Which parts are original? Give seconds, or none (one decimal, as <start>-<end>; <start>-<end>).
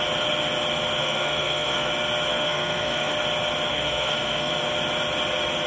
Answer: 0.0-1.0; 1.9-2.3; 3.1-3.7; 4.5-5.7